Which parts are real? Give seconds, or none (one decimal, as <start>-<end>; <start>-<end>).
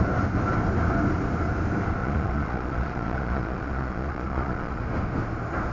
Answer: 0.0-2.0; 4.8-5.7